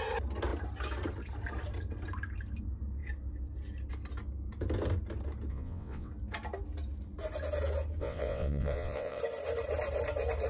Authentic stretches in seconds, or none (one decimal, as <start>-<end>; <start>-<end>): 0.0-5.5; 6.1-8.0; 9.2-10.5